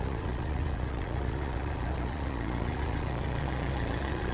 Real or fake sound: fake